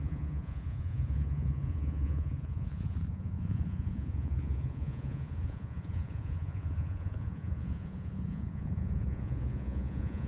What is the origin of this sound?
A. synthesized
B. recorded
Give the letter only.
A